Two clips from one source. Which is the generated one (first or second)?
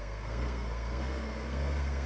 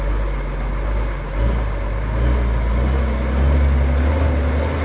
first